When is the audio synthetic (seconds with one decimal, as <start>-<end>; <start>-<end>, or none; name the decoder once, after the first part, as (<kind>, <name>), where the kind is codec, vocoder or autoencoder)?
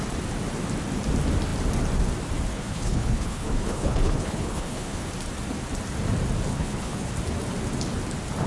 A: 2.5-5.1 (codec, HILCodec); 6.5-7.1